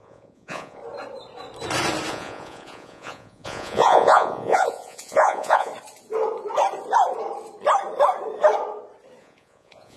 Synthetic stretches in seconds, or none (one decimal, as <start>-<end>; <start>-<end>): 0.0-0.8; 2.1-5.7; 9.2-10.0